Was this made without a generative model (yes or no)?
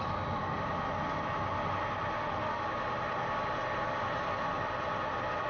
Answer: yes